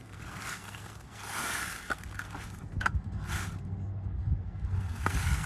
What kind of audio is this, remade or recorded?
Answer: remade